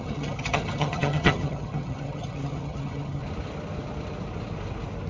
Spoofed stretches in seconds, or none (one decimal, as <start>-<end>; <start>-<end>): 0.0-3.2

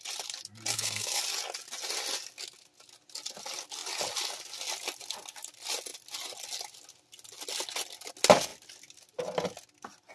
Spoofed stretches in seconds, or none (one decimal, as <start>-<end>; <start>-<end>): 0.7-1.2

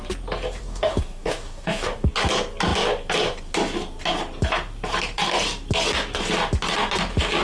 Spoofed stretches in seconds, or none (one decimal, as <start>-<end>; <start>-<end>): 0.6-2.1

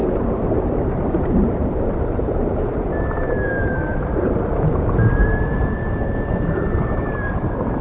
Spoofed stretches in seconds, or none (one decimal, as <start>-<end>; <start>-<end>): 0.0-7.8

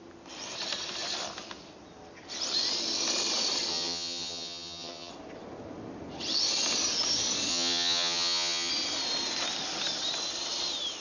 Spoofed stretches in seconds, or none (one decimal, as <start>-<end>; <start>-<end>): 3.7-5.1; 7.5-8.7

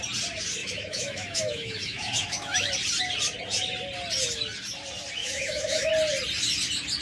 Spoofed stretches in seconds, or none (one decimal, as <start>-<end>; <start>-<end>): 0.6-2.7; 5.2-5.9

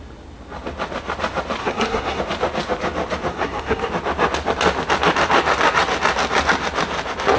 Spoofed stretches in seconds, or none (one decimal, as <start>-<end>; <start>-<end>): 1.6-2.2; 3.3-3.9

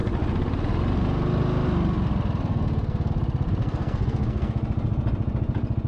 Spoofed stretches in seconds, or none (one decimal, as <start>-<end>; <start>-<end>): 2.5-3.1; 3.6-4.5